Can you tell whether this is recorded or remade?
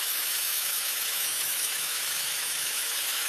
remade